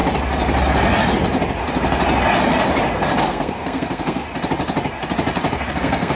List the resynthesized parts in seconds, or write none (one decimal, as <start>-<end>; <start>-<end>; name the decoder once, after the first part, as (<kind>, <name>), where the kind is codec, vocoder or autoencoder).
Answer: 3.2-4.2 (codec, SNAC); 5.7-6.2